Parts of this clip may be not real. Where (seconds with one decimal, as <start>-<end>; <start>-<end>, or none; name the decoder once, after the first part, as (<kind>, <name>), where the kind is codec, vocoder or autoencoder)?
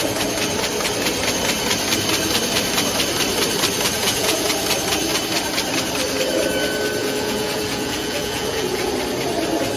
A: 4.0-4.5 (vocoder, Vocos); 7.0-8.9